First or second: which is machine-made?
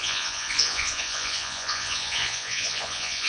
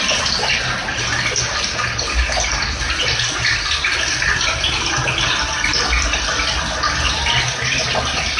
first